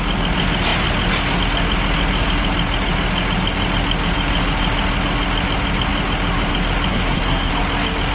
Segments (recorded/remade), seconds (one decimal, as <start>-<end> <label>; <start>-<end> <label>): 0.0-6.9 recorded; 6.9-7.5 remade; 7.5-8.1 recorded